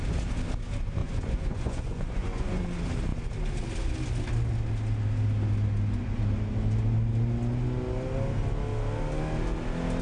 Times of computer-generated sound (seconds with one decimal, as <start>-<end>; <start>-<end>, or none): 1.0-2.6